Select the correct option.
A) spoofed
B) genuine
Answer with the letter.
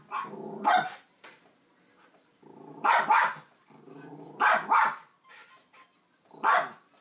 B